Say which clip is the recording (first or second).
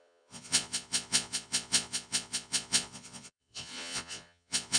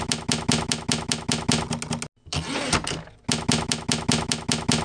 second